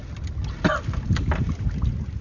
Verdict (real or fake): real